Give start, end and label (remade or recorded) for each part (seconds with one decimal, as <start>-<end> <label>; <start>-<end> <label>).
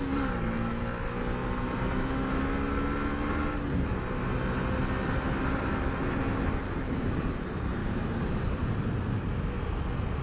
0.0-1.4 recorded; 1.4-2.4 remade; 2.4-7.8 recorded; 7.8-9.1 remade; 9.1-10.2 recorded